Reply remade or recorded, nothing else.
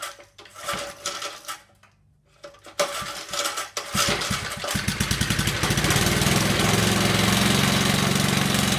recorded